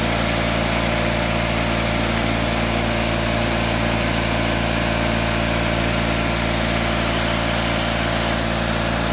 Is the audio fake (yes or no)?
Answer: no